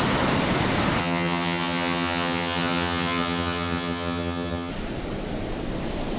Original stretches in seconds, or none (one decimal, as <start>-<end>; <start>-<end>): 0.0-1.0; 4.7-6.2